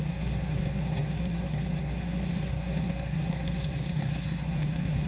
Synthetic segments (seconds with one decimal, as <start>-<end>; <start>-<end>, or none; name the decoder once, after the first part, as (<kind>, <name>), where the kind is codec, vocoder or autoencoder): 0.0-5.1 (codec, SNAC)